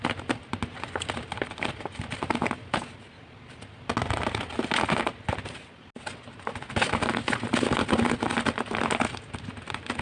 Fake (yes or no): no